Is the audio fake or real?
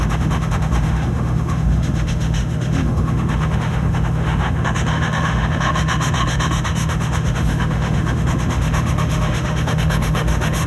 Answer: fake